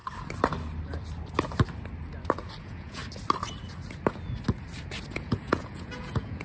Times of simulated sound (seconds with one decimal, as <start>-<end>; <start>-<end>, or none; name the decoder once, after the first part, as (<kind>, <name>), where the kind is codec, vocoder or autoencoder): 2.6-3.0 (vocoder, Vocos); 5.1-6.4